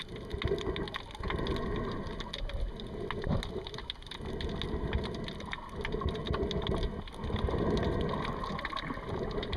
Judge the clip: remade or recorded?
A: recorded